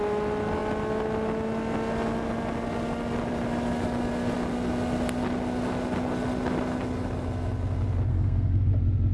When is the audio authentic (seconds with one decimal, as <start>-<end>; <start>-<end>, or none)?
0.0-8.1; 8.7-9.1